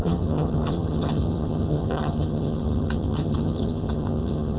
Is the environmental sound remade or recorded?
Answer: remade